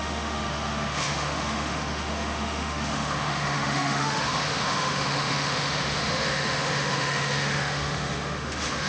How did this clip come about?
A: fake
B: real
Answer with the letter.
A